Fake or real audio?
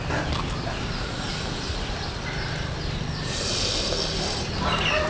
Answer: real